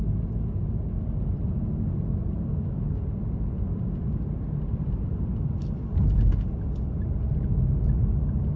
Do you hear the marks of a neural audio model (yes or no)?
no